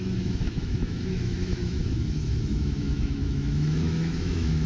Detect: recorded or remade remade